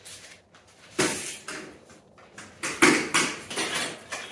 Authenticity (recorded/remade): recorded